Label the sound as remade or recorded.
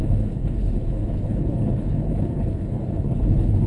remade